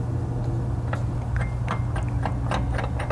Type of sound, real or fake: real